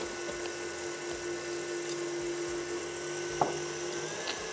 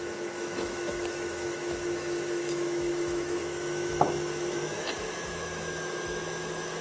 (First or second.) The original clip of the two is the first